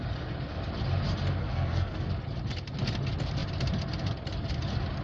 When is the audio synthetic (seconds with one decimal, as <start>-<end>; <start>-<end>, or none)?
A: 1.4-2.1